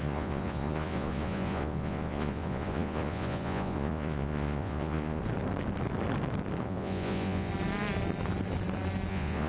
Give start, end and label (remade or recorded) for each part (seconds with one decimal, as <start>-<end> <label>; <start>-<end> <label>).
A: 0.0-5.2 remade; 5.2-6.6 recorded; 6.6-7.5 remade; 7.5-9.1 recorded; 9.1-9.5 remade